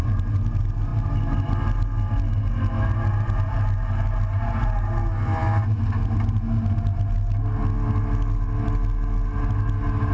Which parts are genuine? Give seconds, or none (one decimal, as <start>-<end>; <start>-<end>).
0.0-10.1

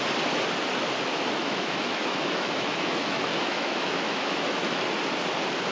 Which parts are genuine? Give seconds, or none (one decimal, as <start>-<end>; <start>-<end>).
0.0-1.4; 4.8-5.7

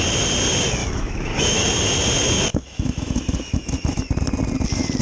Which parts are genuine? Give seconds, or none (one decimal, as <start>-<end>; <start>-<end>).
0.0-0.8; 1.7-2.5; 4.1-5.0

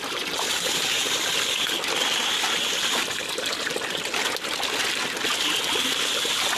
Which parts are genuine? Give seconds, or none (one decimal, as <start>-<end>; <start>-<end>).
0.0-6.6

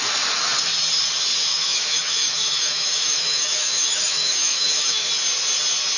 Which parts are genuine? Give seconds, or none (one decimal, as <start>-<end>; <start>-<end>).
0.0-1.5; 5.1-6.0

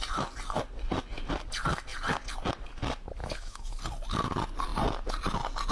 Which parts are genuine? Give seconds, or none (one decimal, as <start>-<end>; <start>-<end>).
0.0-3.2; 3.8-5.7

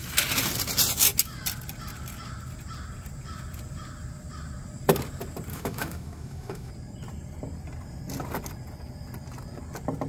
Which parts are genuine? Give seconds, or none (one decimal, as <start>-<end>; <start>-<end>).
0.0-5.5; 6.7-10.1